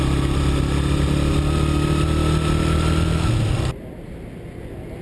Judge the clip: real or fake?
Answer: real